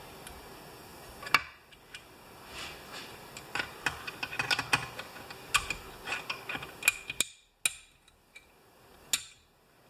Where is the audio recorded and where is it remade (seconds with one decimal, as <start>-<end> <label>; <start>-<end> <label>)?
0.0-9.9 recorded